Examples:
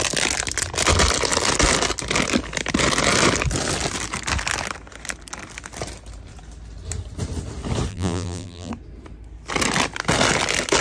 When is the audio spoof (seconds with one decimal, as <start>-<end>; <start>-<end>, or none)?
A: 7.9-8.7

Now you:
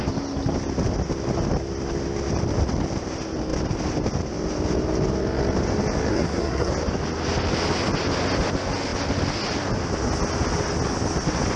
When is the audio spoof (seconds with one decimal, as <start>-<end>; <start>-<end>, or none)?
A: 6.1-6.7

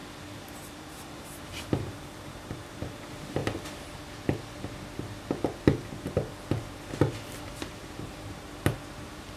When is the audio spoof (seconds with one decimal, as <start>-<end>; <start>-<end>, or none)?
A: 0.5-3.4; 7.5-9.4

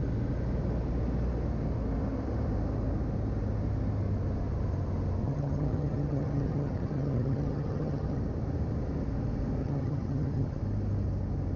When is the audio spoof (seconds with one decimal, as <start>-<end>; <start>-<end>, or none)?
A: 5.2-8.2; 9.6-10.6

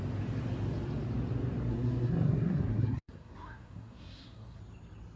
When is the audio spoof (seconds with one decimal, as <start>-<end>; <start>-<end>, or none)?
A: 1.7-4.6